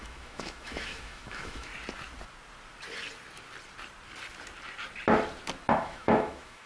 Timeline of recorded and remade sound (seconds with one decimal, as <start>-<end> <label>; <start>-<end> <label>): 0.0-1.7 remade; 1.7-5.7 recorded; 5.7-6.7 remade